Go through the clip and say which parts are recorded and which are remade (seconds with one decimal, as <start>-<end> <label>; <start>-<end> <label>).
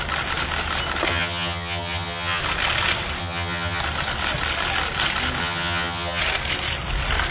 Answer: 0.0-1.1 recorded; 1.1-2.4 remade; 2.4-3.2 recorded; 3.2-3.8 remade; 3.8-5.4 recorded; 5.4-6.2 remade; 6.2-7.3 recorded